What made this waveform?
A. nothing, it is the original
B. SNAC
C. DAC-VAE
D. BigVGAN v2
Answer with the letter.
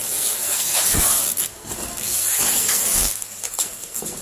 B